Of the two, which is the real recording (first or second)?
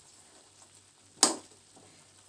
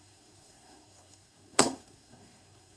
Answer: first